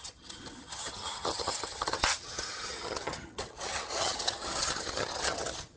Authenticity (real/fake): fake